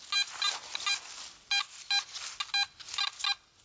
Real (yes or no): yes